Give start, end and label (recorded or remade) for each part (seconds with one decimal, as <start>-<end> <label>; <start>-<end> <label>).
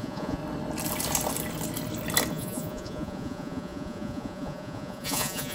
0.0-0.4 remade; 0.4-2.3 recorded; 2.3-5.5 remade